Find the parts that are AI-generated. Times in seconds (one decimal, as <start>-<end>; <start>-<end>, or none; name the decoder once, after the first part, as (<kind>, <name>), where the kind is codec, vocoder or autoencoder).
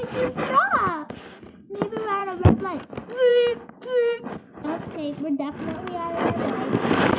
2.2-2.8 (autoencoder, DAC-VAE)